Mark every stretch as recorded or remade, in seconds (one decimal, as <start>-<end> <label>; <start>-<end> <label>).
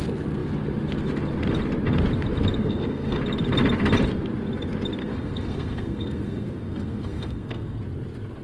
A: 0.0-2.6 recorded; 2.6-3.2 remade; 3.2-5.0 recorded; 5.0-7.8 remade; 7.8-8.4 recorded